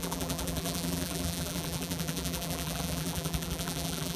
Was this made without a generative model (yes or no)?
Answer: no